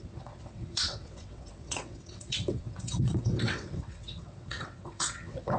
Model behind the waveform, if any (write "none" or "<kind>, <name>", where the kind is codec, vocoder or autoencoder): vocoder, WaveNeXt